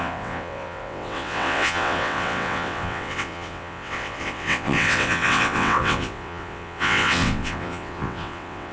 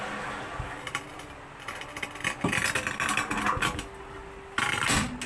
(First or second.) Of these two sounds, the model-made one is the first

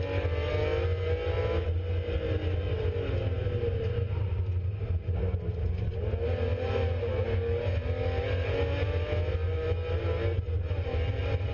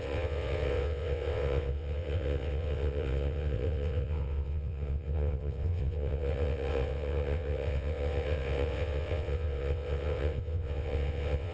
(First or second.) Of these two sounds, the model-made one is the second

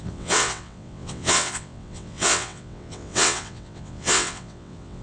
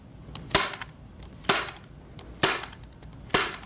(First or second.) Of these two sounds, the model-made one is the first